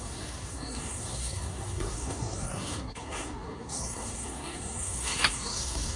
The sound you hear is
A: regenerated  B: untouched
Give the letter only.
A